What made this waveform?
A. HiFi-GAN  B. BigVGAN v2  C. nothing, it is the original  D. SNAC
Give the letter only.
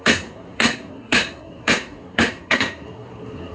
D